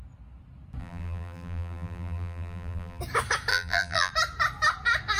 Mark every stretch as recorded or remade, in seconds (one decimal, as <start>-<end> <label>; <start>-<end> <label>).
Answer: 0.0-0.8 recorded; 0.8-3.0 remade; 3.0-3.5 recorded; 3.5-4.1 remade; 4.1-5.2 recorded